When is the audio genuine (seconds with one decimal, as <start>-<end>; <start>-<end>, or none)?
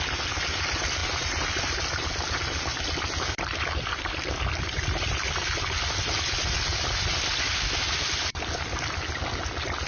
0.0-2.7; 6.1-9.9